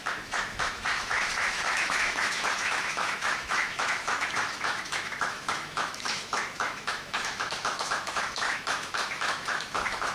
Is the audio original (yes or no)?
no